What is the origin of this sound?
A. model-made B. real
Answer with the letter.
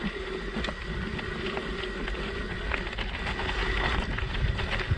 B